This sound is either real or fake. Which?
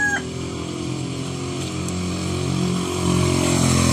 real